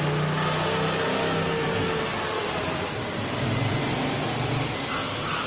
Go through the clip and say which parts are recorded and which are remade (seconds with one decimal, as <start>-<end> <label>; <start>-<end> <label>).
0.0-2.1 recorded; 2.1-4.9 remade; 4.9-5.5 recorded

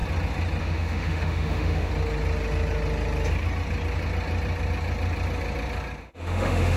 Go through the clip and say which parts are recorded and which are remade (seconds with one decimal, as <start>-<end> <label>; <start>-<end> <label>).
0.0-0.6 recorded; 0.6-1.9 remade; 1.9-6.0 recorded; 6.0-6.8 remade